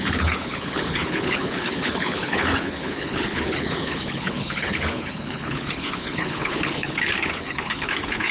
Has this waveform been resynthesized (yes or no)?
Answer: yes